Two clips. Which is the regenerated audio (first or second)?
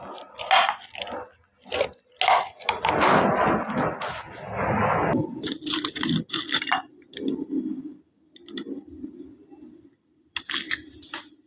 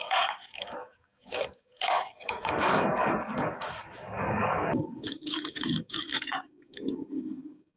second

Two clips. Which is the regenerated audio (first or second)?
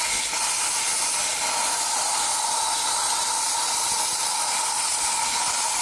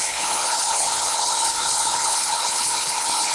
second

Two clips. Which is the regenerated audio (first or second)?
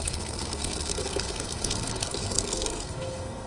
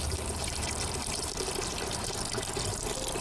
first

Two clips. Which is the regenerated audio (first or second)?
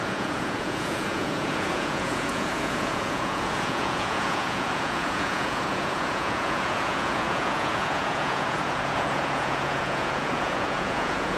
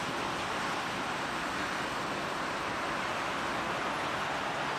first